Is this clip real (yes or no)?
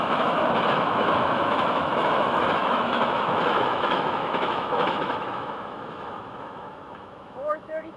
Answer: no